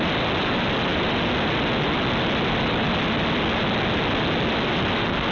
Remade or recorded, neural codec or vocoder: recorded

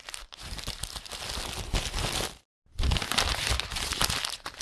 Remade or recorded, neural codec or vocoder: recorded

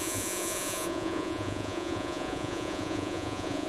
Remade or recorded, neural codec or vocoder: remade, vocoder, Vocos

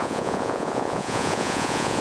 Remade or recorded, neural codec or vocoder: remade, vocoder, Vocos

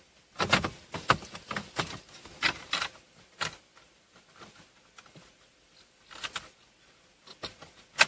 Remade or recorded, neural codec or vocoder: recorded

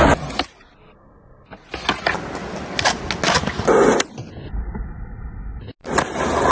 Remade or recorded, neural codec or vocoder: recorded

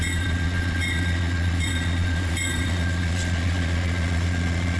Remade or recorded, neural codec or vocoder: remade, vocoder, Vocos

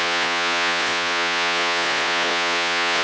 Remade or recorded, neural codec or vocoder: remade, vocoder, Vocos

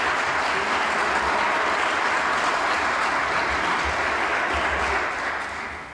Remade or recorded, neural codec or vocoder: recorded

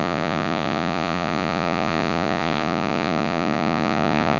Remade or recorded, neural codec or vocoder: remade, vocoder, Vocos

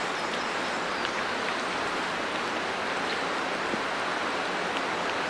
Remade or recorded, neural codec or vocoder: recorded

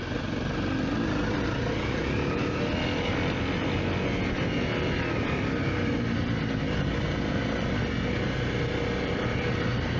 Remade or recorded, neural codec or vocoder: recorded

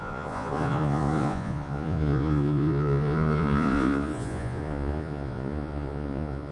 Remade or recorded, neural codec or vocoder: remade, vocoder, Vocos